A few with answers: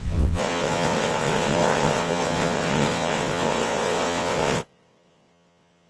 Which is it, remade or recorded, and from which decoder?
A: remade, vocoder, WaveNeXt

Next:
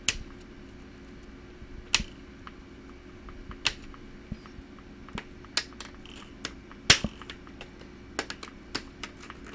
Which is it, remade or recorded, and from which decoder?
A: recorded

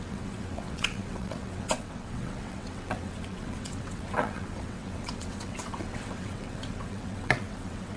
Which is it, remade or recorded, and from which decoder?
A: remade, vocoder, WaveNeXt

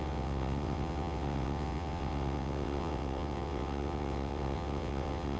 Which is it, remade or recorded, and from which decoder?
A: remade, vocoder, WaveNeXt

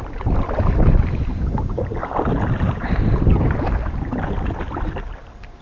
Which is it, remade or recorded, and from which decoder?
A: recorded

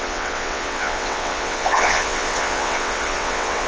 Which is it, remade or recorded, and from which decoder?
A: remade, vocoder, WaveNeXt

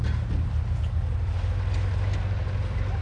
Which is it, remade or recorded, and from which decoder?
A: recorded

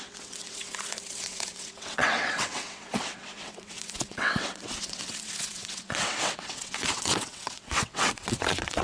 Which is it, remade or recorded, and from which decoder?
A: remade, vocoder, WaveNeXt